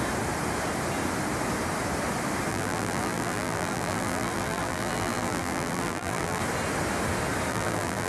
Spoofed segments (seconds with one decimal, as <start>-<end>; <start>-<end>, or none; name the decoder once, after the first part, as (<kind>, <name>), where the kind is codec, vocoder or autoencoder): 2.5-6.4 (vocoder, BigVGAN v2); 7.5-8.1